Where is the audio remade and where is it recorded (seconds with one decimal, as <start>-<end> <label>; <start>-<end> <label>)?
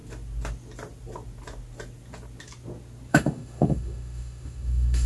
0.0-3.1 recorded; 3.1-5.1 remade